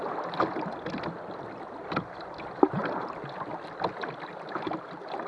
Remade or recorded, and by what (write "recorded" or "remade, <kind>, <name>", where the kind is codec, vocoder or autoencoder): recorded